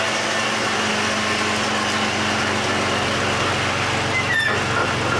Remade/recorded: recorded